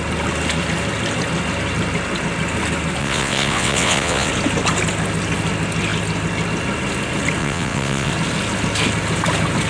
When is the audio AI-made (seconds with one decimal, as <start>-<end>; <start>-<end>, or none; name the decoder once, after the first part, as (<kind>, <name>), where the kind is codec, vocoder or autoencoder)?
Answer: 3.0-4.3 (vocoder, WaveNeXt); 7.4-8.1